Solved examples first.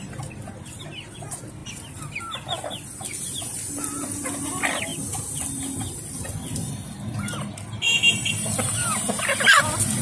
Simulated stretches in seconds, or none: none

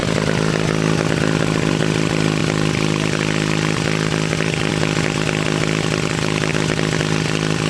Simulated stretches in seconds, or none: none